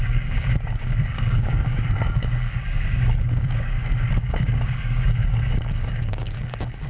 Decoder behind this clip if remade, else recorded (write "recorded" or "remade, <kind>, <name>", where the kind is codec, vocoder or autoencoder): remade, codec, DAC